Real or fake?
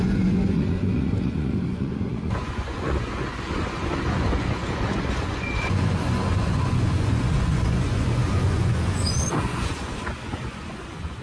fake